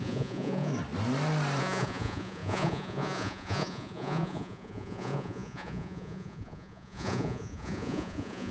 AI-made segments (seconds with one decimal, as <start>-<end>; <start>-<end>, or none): 0.0-0.7; 1.6-8.5